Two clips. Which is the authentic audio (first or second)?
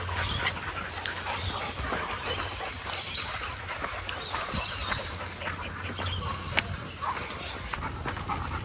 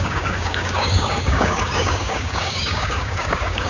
first